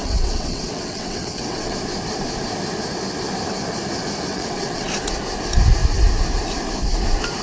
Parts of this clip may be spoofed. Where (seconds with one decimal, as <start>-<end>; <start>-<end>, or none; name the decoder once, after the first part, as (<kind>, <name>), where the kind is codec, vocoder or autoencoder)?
0.0-1.7 (vocoder, WaveNeXt); 4.3-4.9